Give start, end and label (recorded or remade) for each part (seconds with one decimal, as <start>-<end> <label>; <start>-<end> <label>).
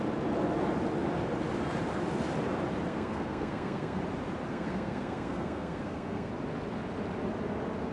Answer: 0.0-2.9 recorded; 2.9-4.0 remade; 4.0-4.5 recorded; 4.5-6.3 remade; 6.3-7.9 recorded